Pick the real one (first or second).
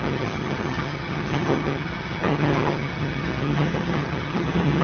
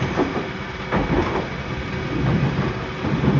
second